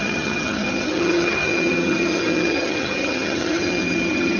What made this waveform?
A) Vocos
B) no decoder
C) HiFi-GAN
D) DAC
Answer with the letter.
C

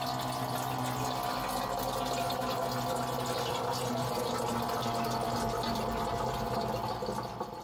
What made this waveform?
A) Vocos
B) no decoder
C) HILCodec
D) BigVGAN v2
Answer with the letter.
B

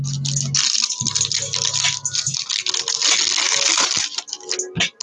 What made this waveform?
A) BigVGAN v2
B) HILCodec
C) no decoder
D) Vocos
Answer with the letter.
C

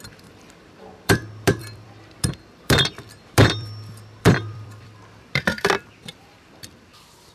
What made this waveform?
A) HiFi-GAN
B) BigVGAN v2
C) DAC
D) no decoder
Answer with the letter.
B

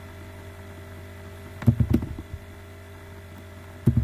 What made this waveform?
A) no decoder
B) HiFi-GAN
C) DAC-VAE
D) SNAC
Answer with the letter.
A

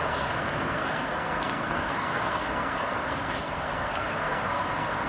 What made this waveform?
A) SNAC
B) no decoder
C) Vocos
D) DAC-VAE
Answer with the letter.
A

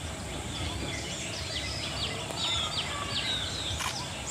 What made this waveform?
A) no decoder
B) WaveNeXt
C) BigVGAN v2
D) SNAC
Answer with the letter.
A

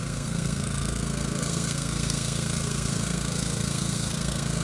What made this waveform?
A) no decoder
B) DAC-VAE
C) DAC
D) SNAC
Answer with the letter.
D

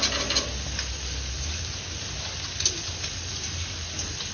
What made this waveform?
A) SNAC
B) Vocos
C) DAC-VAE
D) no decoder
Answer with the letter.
D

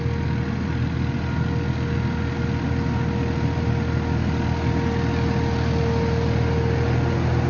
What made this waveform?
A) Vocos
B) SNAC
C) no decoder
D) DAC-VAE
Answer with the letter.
C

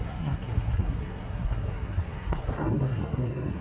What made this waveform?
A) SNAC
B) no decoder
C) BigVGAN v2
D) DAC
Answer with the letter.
A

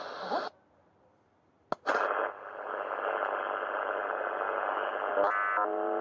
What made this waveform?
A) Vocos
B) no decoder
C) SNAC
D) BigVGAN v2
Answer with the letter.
B